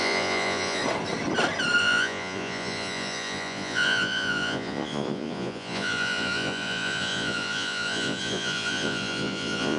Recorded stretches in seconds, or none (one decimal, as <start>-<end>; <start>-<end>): 0.8-1.8